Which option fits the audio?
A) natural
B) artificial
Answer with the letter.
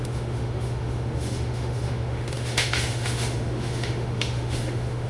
B